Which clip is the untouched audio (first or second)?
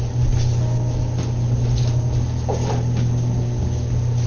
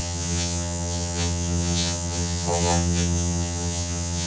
first